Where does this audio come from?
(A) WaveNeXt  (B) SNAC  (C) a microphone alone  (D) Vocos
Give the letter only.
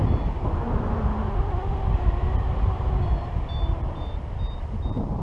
C